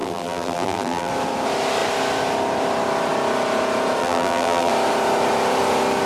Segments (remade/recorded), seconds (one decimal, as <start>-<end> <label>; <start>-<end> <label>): 0.0-1.1 remade; 1.1-4.0 recorded; 4.0-4.7 remade; 4.7-6.1 recorded